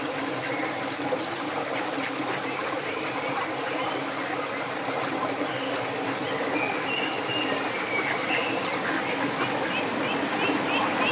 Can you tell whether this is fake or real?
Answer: real